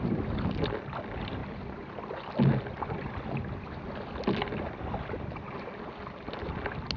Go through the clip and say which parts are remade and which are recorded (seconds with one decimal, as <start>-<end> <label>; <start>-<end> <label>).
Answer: 0.0-7.0 recorded